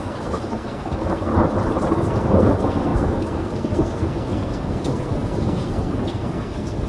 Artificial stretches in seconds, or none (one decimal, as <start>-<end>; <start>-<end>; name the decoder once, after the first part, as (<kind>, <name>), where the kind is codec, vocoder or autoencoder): 0.0-1.3 (codec, SNAC); 1.9-6.9